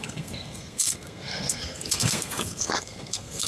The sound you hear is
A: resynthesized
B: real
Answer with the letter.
A